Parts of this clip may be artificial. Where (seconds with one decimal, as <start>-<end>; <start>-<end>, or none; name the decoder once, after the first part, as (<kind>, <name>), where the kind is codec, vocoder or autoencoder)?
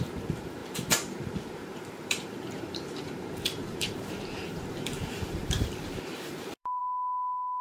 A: 0.0-6.8 (vocoder, BigVGAN v2)